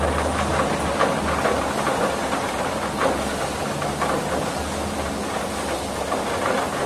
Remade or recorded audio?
recorded